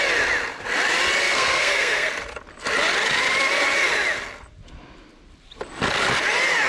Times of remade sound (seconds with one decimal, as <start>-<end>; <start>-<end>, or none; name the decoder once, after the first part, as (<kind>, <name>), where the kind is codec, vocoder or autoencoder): 1.2-2.1 (codec, SNAC)

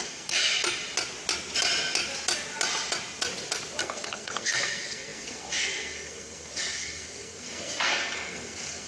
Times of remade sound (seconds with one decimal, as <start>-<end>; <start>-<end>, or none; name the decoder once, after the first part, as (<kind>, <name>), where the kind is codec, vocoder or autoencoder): 0.0-0.6 (codec, SNAC); 3.8-8.9

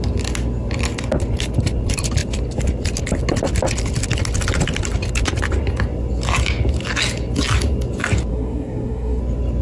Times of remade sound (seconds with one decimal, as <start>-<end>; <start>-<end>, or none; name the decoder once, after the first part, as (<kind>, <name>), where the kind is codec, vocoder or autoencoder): 8.3-9.2 (codec, SNAC)

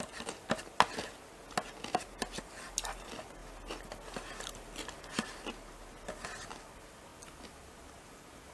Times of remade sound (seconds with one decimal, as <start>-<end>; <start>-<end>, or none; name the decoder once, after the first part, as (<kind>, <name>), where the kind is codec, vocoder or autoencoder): none